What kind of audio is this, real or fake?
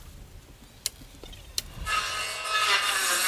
real